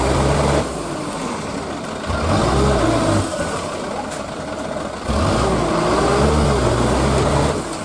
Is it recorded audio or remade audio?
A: recorded